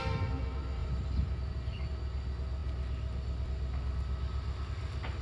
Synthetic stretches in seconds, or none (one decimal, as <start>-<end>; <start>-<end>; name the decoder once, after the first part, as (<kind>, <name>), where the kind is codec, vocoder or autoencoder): 0.8-1.9 (vocoder, BigVGAN v2)